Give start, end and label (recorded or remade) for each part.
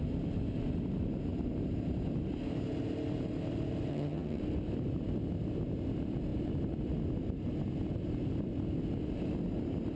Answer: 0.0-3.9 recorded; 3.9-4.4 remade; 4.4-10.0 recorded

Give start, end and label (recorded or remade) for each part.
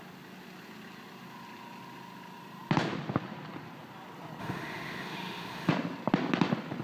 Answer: 0.0-4.4 recorded; 4.4-5.7 remade; 5.7-6.8 recorded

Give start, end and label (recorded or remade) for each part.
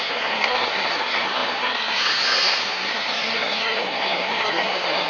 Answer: 0.0-5.1 remade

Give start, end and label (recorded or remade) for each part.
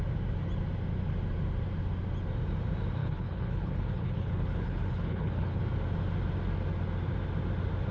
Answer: 0.0-3.0 recorded; 3.0-5.6 remade; 5.6-7.9 recorded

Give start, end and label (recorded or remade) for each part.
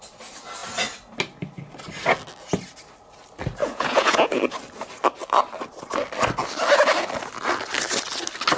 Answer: 0.0-3.6 recorded; 3.6-4.4 remade; 4.4-8.6 recorded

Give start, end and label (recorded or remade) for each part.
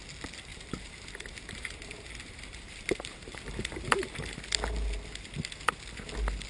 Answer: 0.0-0.5 recorded; 0.5-4.4 remade; 4.4-6.5 recorded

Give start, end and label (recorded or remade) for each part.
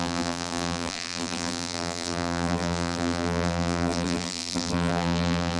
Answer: 0.0-5.6 remade